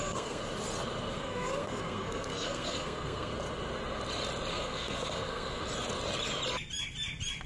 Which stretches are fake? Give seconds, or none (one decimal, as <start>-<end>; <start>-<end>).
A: 0.0-0.4; 1.1-3.3; 4.5-5.6